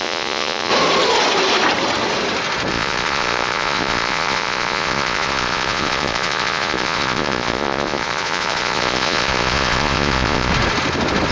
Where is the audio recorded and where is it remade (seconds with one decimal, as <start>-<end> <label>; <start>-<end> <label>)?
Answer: 0.0-0.7 remade; 0.7-2.7 recorded; 2.7-10.5 remade; 10.5-11.3 recorded